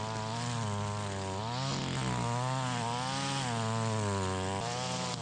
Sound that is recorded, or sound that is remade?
recorded